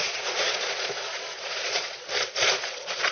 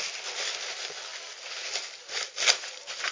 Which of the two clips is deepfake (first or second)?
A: first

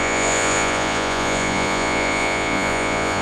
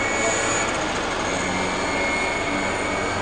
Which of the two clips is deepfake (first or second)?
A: first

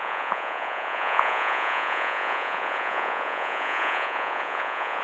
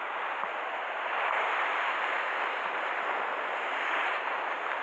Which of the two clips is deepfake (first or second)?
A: first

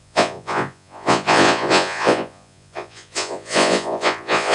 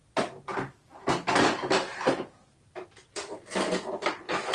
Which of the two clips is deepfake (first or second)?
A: first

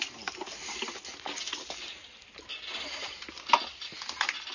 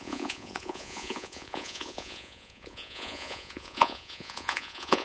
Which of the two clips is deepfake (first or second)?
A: second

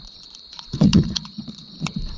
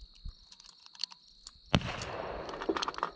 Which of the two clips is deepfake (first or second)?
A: first